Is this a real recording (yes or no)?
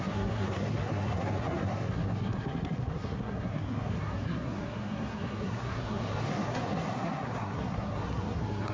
no